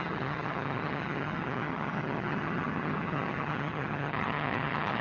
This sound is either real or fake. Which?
fake